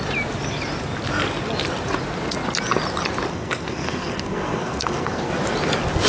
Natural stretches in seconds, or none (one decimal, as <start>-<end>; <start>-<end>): 0.0-3.3; 5.3-6.1